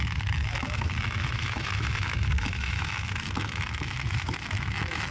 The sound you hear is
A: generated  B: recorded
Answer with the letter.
A